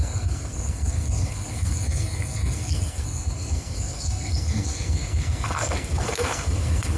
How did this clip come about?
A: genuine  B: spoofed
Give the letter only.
B